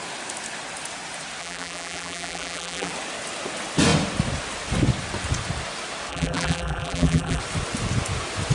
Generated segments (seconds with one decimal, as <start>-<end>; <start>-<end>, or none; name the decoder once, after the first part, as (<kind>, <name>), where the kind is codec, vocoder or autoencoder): 1.4-2.9 (vocoder, BigVGAN v2); 6.1-7.4